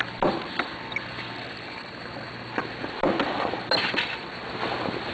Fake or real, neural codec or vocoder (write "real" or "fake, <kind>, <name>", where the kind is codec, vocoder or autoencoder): real